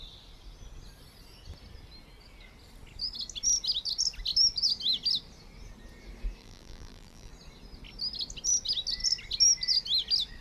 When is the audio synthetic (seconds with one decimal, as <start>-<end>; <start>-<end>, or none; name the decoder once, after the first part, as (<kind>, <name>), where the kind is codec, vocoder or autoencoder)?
6.4-7.3 (vocoder, BigVGAN v2)